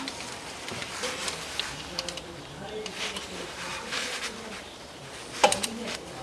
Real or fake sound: fake